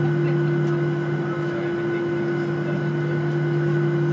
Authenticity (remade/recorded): recorded